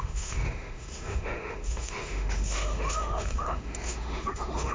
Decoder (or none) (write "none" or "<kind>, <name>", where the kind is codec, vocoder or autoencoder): autoencoder, DAC-VAE